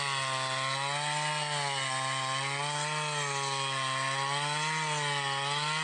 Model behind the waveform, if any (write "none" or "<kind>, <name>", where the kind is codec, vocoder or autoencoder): none